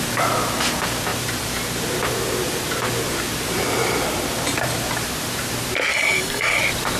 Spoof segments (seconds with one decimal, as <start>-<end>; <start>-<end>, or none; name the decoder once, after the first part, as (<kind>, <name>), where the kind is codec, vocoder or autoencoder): 5.9-6.6 (codec, DAC)